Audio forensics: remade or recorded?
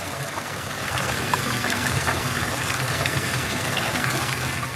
remade